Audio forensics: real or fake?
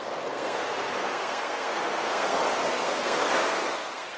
fake